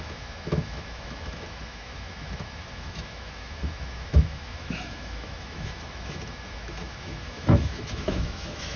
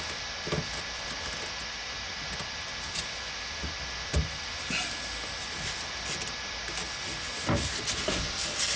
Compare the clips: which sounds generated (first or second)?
first